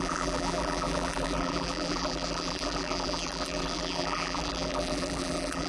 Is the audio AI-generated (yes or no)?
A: yes